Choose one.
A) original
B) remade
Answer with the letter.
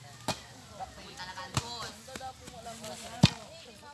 A